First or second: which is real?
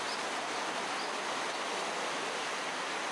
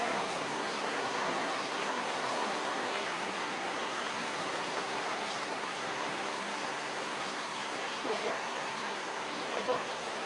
first